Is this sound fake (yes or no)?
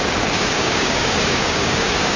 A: yes